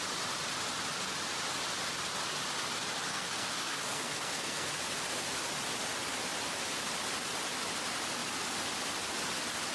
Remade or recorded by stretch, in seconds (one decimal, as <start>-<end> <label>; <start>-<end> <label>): 0.0-3.1 recorded; 3.1-4.7 remade; 4.7-9.7 recorded